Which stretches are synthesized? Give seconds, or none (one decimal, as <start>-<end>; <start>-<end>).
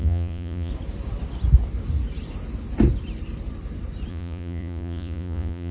0.0-0.7; 4.1-5.7